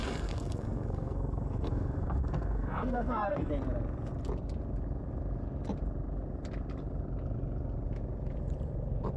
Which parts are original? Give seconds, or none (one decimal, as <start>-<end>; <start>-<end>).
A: 3.5-9.2